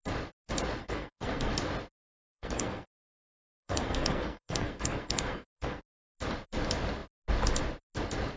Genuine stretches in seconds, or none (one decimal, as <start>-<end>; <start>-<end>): 0.0-0.8; 1.5-2.0; 5.8-8.4